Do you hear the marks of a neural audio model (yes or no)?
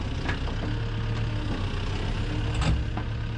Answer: no